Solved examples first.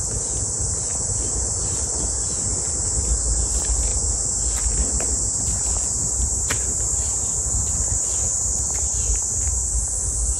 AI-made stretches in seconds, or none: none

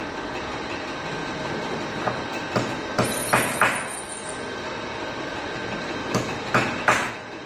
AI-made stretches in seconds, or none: none

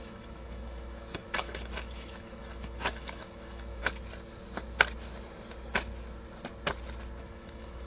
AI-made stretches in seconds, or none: 0.0-3.8; 7.2-7.9

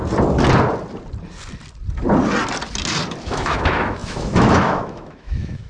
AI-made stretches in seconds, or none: 3.2-5.7

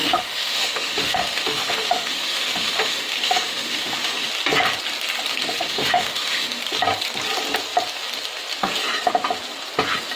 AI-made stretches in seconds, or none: 0.0-4.3; 5.3-6.6

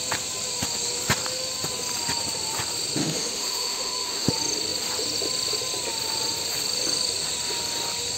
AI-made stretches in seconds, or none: 3.0-4.3